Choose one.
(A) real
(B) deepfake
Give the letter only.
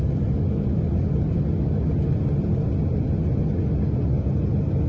A